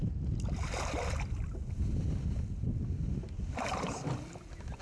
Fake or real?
real